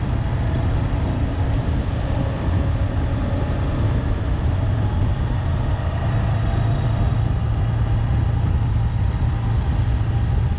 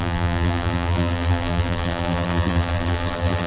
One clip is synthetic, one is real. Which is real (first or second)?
first